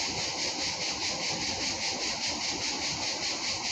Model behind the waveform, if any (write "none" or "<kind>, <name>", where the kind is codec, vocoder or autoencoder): none